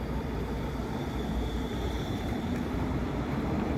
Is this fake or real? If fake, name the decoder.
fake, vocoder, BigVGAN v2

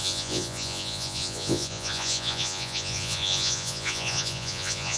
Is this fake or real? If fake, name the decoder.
fake, vocoder, Vocos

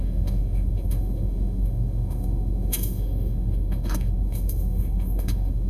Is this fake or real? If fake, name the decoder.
fake, autoencoder, DAC-VAE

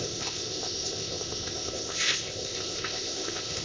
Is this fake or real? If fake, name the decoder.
fake, codec, ZipCodec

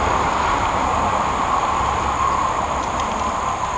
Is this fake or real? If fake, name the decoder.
real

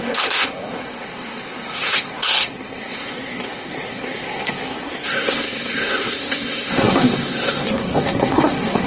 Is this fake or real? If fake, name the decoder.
fake, codec, SNAC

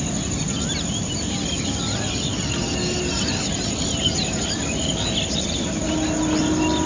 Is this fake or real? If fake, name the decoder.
real